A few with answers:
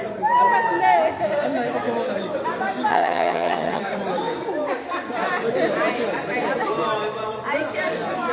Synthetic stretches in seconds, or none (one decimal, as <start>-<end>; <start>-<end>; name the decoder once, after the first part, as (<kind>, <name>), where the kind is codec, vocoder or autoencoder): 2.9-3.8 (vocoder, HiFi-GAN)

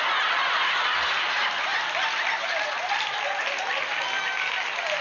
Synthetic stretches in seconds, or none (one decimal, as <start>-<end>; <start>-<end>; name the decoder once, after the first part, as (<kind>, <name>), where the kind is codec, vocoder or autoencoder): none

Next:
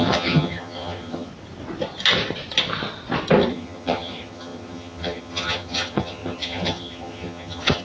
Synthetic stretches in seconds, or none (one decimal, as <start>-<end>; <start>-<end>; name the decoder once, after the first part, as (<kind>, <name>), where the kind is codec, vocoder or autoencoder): 0.0-1.3 (vocoder, HiFi-GAN); 3.5-7.8

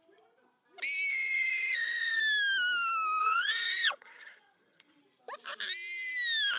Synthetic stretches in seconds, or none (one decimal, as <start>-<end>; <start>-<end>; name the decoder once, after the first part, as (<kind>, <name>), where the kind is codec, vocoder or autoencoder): 1.1-2.2 (vocoder, HiFi-GAN); 3.2-5.0